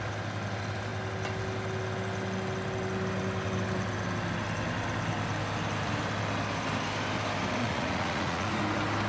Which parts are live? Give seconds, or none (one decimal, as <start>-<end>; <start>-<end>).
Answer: 0.0-7.6; 8.5-9.1